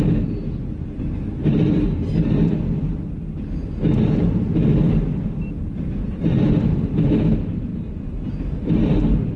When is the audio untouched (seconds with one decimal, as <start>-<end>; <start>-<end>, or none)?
0.0-9.4